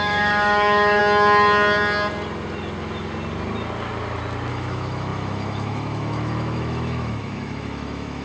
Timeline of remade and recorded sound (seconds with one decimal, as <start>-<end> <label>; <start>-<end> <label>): 0.0-1.0 remade; 1.0-4.5 recorded; 4.5-8.2 remade